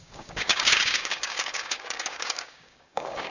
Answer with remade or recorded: remade